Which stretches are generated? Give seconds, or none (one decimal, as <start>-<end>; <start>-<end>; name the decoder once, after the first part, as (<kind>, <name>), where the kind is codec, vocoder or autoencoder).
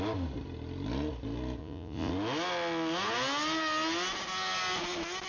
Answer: 1.6-2.1 (vocoder, Vocos)